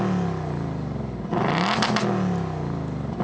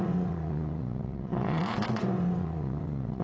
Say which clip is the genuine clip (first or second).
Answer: first